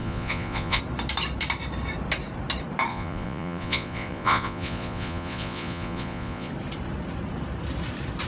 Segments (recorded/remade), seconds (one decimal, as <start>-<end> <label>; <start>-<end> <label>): 0.0-0.8 remade; 0.8-2.9 recorded; 2.9-6.5 remade; 6.5-8.3 recorded